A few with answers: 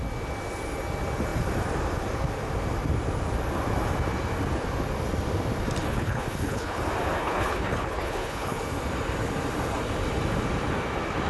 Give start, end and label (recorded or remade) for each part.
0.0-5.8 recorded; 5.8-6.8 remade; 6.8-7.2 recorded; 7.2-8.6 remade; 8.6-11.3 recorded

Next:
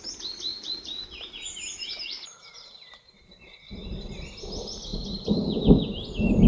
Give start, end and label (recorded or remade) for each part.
0.0-0.5 recorded; 0.5-4.4 remade; 4.4-4.9 recorded; 4.9-5.6 remade; 5.6-6.5 recorded

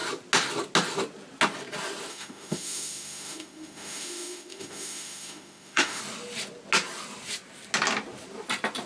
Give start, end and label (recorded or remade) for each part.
0.0-2.1 recorded; 2.1-6.0 remade; 6.0-8.9 recorded

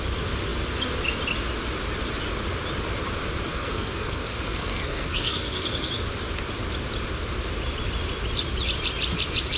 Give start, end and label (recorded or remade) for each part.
0.0-3.5 recorded; 3.5-5.9 remade; 5.9-9.6 recorded

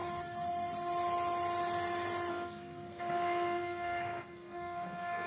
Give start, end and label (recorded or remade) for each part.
0.0-2.3 recorded; 2.3-5.3 remade

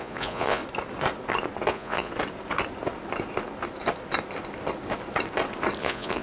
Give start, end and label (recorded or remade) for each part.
0.0-0.6 remade; 0.6-1.7 recorded; 1.7-2.1 remade; 2.1-5.8 recorded; 5.8-6.2 remade

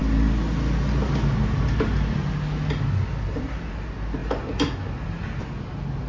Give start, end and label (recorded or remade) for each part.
0.0-6.1 recorded

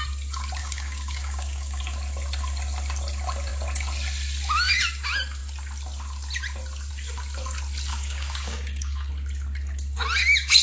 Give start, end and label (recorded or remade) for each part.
0.0-0.6 recorded; 0.6-1.8 remade; 1.8-7.9 recorded; 7.9-9.1 remade; 9.1-10.6 recorded